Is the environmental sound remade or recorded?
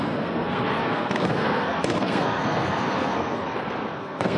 remade